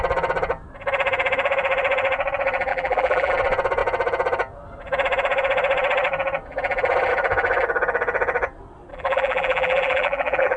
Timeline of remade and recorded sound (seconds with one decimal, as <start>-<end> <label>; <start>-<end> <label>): 0.0-2.7 recorded; 2.7-3.3 remade; 3.3-8.9 recorded; 8.9-10.6 remade